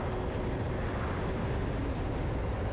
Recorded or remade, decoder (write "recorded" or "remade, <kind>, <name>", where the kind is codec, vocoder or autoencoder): recorded